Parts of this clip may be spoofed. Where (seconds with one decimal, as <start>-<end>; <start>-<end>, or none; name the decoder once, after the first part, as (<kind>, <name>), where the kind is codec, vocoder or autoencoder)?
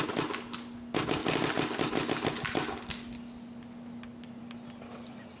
none